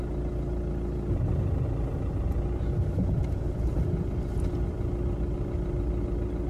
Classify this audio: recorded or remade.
recorded